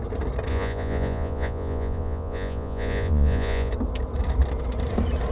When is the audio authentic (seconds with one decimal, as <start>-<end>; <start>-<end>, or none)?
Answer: 0.0-0.5; 3.7-5.3